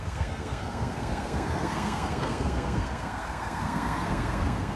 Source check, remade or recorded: remade